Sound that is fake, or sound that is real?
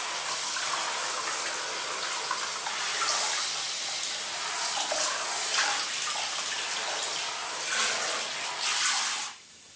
real